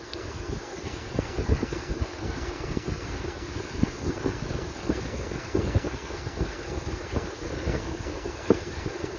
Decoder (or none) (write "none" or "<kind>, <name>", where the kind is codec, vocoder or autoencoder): codec, SNAC